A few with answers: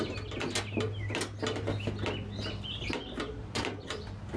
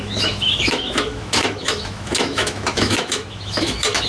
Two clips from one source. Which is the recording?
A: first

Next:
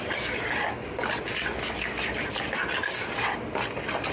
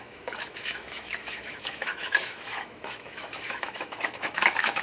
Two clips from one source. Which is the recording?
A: first